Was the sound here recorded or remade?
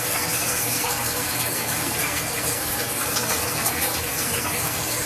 remade